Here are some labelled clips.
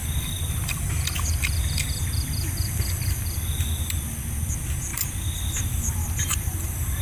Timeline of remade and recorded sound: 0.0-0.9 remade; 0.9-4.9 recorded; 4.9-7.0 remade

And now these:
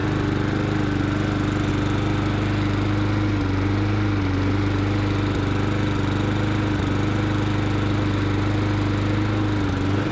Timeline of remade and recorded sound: 0.0-10.1 recorded

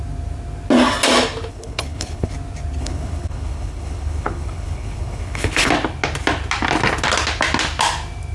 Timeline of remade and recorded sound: 0.0-1.5 recorded; 1.5-2.3 remade; 2.3-2.8 recorded; 2.8-5.7 remade; 5.7-8.3 recorded

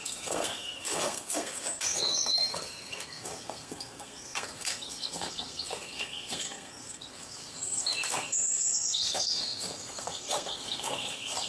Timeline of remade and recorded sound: 0.0-11.5 remade

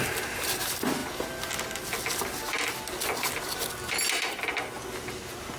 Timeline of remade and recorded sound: 0.0-5.6 recorded

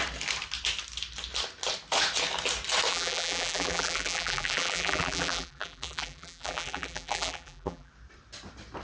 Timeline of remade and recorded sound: 0.0-2.9 recorded; 2.9-7.9 remade; 7.9-8.8 recorded